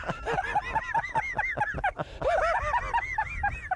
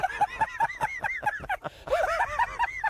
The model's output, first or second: second